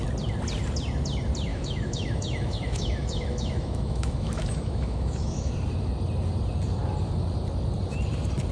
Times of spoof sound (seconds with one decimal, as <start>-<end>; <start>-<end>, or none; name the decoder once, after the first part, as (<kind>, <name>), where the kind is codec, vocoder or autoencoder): 1.5-5.5 (autoencoder, DAC-VAE)